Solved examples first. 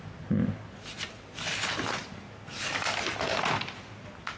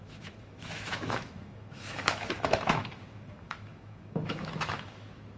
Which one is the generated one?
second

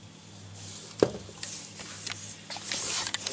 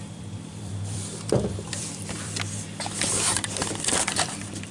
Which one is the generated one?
second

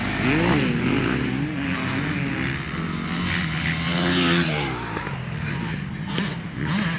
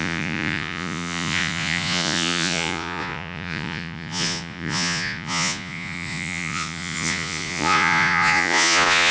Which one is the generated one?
second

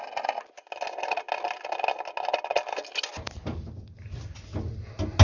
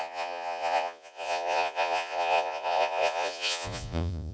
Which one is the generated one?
second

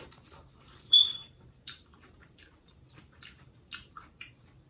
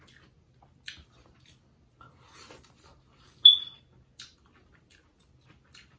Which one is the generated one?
first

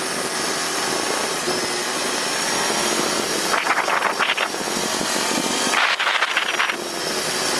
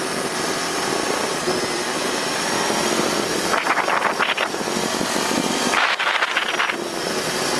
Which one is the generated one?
second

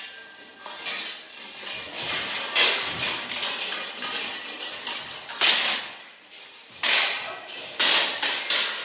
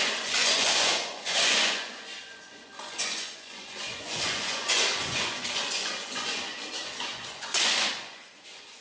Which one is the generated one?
second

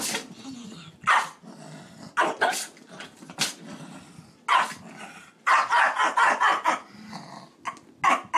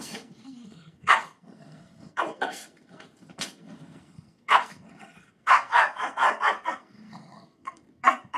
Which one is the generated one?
second